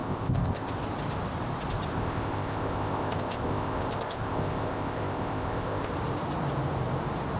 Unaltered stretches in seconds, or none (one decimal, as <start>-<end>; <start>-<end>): 0.7-1.9; 5.9-7.4